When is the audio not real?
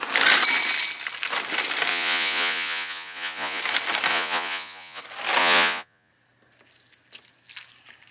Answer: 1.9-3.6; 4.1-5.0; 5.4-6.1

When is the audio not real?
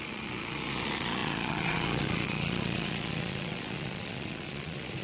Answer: 0.0-5.0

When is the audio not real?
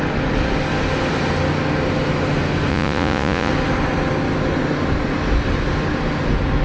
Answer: 2.7-3.5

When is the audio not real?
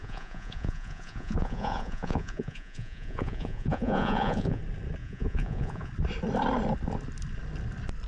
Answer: 0.0-4.6; 5.0-5.9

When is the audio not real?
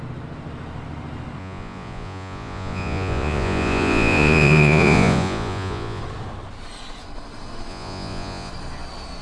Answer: 1.4-6.0; 7.7-8.5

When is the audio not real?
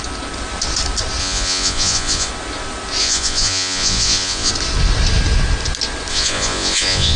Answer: 1.2-2.3; 3.0-4.5; 6.1-7.2